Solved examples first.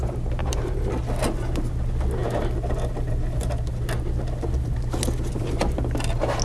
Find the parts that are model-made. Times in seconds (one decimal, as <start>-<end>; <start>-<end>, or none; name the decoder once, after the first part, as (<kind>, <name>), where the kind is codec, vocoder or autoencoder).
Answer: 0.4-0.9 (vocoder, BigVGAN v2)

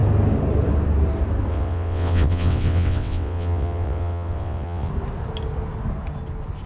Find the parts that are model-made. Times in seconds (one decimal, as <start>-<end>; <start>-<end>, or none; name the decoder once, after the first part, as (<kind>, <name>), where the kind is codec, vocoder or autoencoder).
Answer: 1.5-4.9 (vocoder, WaveNeXt)

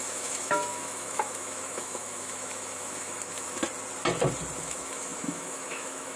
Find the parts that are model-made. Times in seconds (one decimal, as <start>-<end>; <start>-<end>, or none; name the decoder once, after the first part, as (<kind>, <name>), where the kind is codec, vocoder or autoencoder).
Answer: 0.0-3.6 (autoencoder, DAC-VAE); 4.6-6.2